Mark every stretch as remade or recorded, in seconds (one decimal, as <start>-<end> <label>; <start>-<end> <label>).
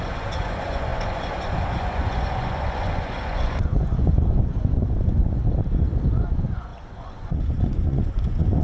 0.0-5.4 remade; 5.4-6.3 recorded; 6.3-8.6 remade